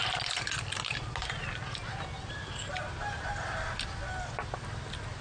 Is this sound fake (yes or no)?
no